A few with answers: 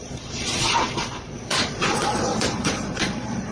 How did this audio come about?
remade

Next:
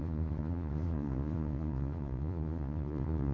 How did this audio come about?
remade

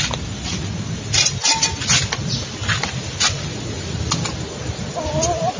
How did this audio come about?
recorded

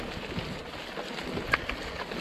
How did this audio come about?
recorded